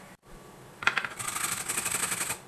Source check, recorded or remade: recorded